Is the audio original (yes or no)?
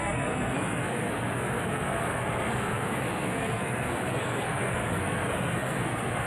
no